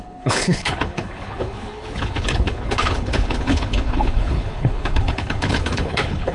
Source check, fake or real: fake